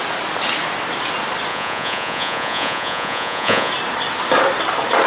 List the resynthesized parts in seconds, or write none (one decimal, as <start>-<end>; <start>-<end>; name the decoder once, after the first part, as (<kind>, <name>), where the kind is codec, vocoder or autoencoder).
1.5-3.7 (vocoder, Vocos)